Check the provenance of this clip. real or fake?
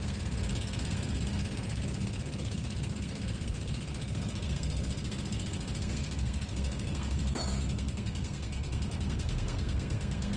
fake